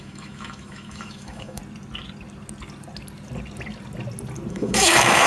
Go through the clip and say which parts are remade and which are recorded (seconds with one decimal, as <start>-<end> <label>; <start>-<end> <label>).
0.0-1.6 remade; 1.6-4.5 recorded; 4.5-5.3 remade